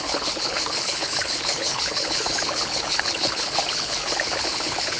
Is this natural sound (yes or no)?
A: no